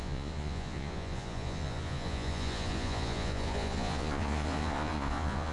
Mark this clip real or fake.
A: fake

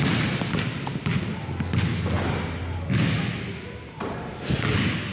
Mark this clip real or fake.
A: real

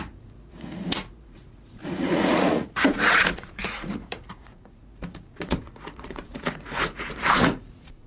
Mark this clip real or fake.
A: fake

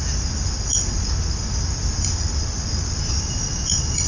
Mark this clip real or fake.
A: real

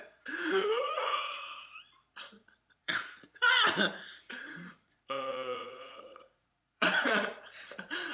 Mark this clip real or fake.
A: fake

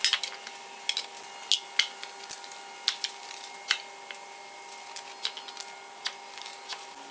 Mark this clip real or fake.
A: real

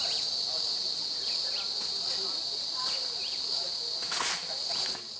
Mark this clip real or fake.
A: real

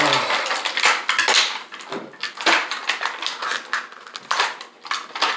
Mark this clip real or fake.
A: real